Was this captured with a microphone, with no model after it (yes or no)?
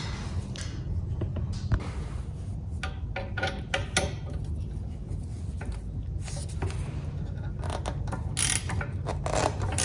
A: yes